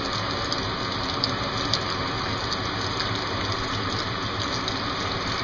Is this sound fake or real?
real